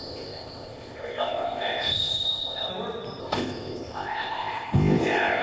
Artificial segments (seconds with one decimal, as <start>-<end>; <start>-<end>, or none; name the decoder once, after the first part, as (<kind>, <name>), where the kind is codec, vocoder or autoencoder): 0.0-2.7 (codec, ZipCodec); 3.2-5.4